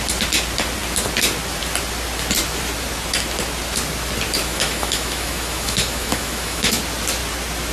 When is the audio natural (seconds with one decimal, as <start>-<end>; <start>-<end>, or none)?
0.0-4.4; 6.8-7.7

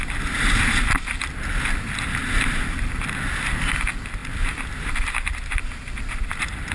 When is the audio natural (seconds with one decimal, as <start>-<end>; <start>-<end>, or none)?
0.0-6.7

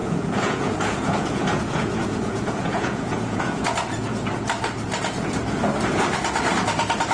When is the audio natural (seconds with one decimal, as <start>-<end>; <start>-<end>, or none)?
4.3-7.1

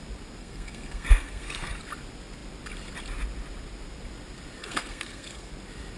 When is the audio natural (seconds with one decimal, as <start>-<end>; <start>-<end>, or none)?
0.0-0.4; 1.8-4.6; 5.5-6.0

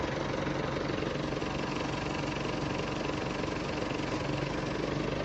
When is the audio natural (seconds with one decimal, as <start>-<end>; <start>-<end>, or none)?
0.0-5.2